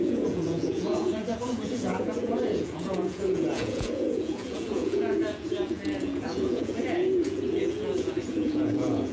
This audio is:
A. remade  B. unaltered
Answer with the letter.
A